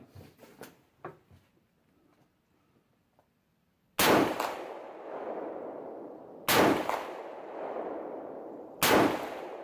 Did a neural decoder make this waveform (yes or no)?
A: no